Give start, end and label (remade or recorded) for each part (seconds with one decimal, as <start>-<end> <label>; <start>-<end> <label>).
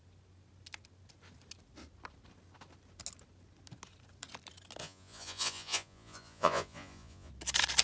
0.0-4.8 recorded; 4.8-7.3 remade; 7.3-7.8 recorded